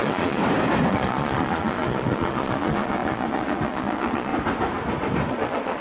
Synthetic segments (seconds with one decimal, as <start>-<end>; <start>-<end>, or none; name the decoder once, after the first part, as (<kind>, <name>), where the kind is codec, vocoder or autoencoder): 0.0-0.4 (vocoder, Vocos); 0.9-4.3; 5.3-5.8